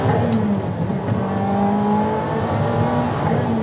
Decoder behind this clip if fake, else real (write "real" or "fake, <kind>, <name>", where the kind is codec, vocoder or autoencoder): real